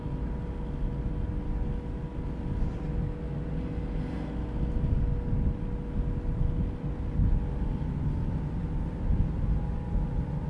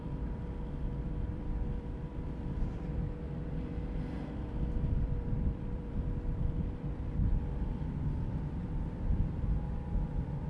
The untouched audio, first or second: first